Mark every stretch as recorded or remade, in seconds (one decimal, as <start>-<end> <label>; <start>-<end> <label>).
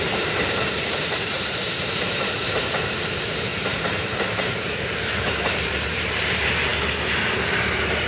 0.0-6.7 remade; 6.7-7.3 recorded; 7.3-8.1 remade